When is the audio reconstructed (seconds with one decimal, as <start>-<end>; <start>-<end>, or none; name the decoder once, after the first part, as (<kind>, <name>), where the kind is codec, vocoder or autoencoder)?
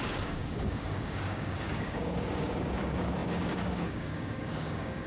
0.0-5.1 (codec, DAC)